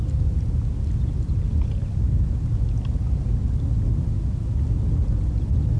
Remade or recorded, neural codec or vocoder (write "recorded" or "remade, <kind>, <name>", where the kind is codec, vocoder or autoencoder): recorded